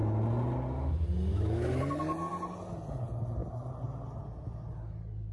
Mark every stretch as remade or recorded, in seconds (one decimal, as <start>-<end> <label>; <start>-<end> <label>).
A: 0.0-1.3 recorded; 1.3-1.8 remade; 1.8-5.3 recorded